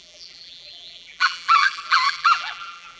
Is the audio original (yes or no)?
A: no